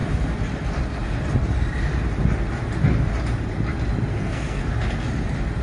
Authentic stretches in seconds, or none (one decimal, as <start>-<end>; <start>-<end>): 0.0-4.1; 4.7-5.6